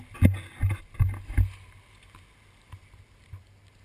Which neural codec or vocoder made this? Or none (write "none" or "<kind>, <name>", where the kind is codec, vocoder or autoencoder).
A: none